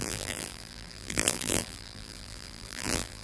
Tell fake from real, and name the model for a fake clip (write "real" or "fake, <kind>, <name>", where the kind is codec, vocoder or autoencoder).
fake, vocoder, BigVGAN v2